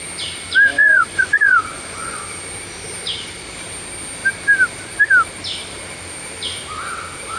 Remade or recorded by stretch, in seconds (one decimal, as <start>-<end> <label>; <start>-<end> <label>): 0.0-0.7 recorded; 0.7-2.2 remade; 2.2-7.4 recorded